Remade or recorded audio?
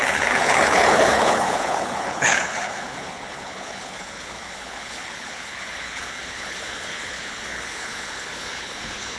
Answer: remade